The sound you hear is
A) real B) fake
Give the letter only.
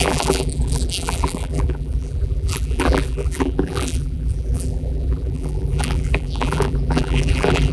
B